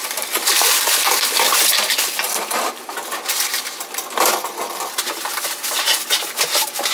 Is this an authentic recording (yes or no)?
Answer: no